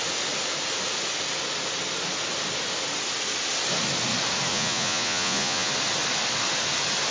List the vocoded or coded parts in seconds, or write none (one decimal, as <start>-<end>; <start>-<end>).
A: 4.5-5.7